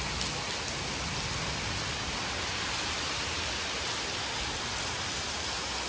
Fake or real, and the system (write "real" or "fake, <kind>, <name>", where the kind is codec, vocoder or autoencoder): real